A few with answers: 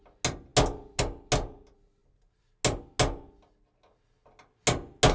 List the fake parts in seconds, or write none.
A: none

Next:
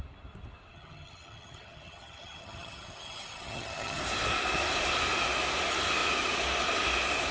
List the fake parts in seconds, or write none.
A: 0.7-4.0

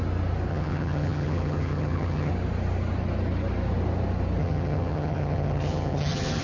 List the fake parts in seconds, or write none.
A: 0.5-2.3; 4.4-6.4